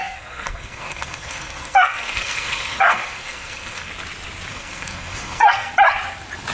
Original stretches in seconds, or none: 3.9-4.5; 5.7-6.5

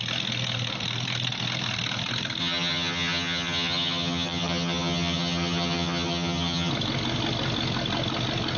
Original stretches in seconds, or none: 0.0-2.4; 6.7-8.6

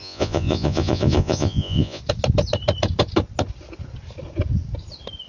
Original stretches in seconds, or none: 2.0-5.3

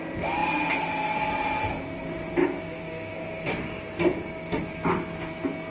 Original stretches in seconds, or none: 0.0-2.4; 4.6-5.7

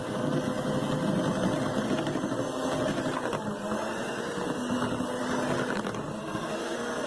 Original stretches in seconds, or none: 0.0-6.2